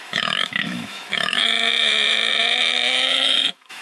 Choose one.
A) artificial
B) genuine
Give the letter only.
A